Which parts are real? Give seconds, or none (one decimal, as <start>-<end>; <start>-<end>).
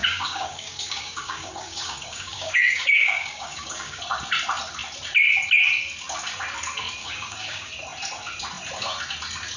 4.0-7.0; 7.7-9.6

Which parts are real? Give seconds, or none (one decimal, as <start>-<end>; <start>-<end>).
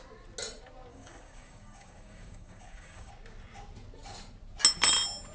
0.0-0.9; 3.1-5.3